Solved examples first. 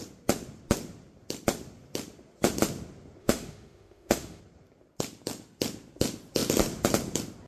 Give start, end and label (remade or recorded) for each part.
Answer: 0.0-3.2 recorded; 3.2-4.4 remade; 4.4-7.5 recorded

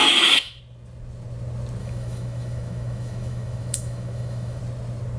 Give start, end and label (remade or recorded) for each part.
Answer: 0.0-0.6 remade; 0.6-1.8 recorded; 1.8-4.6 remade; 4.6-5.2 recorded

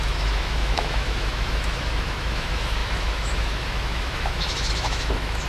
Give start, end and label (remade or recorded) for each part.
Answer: 0.0-5.5 remade